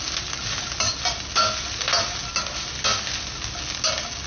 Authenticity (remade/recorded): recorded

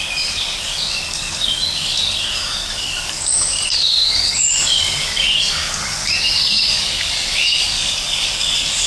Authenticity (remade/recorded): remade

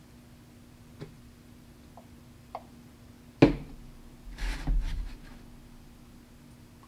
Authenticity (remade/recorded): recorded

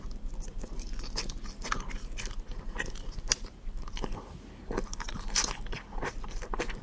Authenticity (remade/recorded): recorded